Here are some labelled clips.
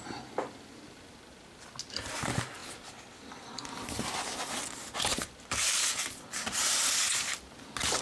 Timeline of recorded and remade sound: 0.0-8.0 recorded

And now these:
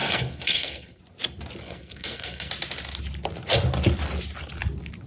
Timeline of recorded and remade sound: 0.0-1.0 remade; 1.0-1.6 recorded; 1.6-2.5 remade; 2.5-5.1 recorded